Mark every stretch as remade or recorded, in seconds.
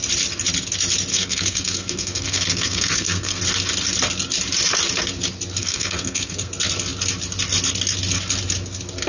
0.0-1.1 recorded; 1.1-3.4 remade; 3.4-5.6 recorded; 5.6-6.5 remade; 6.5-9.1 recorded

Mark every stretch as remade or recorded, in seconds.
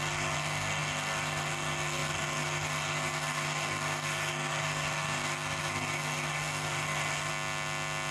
0.0-7.3 remade; 7.3-8.1 recorded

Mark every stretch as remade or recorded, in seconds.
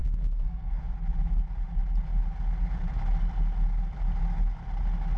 0.0-0.8 remade; 0.8-5.2 recorded